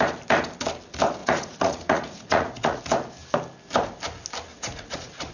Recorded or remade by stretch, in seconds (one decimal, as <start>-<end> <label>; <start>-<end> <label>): 0.0-1.2 recorded; 1.2-2.8 remade; 2.8-4.5 recorded; 4.5-5.3 remade